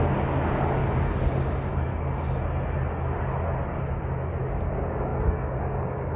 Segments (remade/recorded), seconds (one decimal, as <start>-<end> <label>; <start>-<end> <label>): 0.0-0.8 remade; 0.8-1.3 recorded; 1.3-1.9 remade; 1.9-4.6 recorded; 4.6-6.2 remade